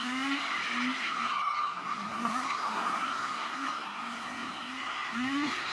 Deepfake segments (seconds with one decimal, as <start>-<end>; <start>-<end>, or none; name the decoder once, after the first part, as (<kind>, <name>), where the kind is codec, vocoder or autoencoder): 0.0-0.4 (codec, SNAC); 1.0-5.7